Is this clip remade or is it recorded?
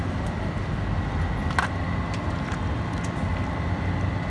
recorded